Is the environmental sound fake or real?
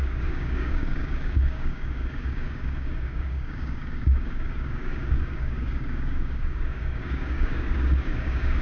fake